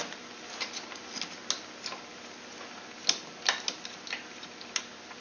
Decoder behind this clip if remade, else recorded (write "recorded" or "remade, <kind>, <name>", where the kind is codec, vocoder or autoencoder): recorded